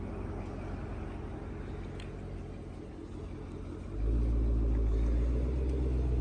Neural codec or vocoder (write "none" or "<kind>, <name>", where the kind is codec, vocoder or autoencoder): none